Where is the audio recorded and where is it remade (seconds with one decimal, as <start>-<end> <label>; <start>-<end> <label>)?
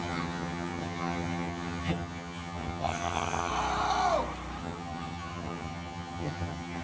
0.0-3.5 remade; 3.5-4.6 recorded; 4.6-6.8 remade